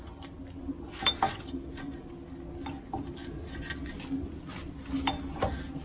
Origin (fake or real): real